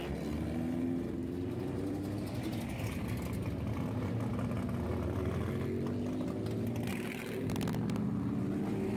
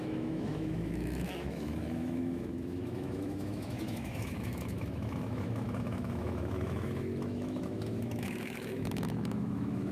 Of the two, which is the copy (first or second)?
second